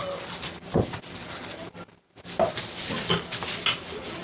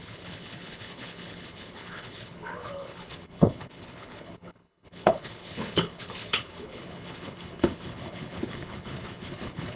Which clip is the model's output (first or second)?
second